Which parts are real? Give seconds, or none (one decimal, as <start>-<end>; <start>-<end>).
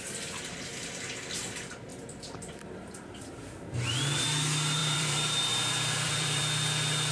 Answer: 0.0-1.9; 3.3-4.8; 6.4-7.1